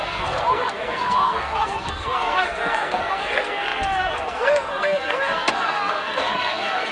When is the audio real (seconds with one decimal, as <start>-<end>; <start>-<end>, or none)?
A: none